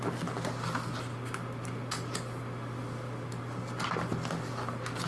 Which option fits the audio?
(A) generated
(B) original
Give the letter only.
B